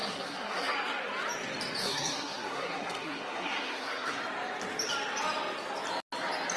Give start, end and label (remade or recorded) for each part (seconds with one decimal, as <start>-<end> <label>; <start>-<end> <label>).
0.0-0.7 remade; 0.7-1.8 recorded; 1.8-4.2 remade; 4.2-6.6 recorded